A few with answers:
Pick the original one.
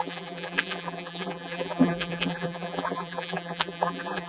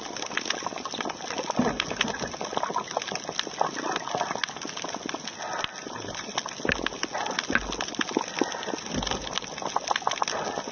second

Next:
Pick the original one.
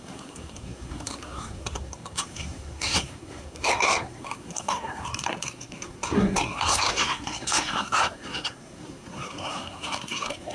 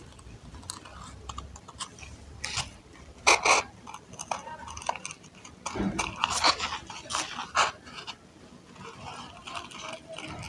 second